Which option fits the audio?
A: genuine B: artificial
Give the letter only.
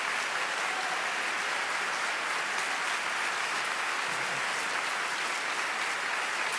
A